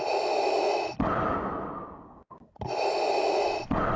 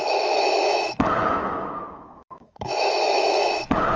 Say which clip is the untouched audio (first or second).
first